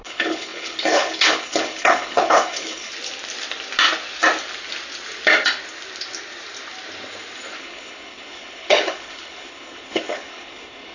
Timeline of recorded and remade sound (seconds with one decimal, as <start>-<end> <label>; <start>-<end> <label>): 0.0-2.9 remade; 2.9-7.6 recorded; 7.6-10.9 remade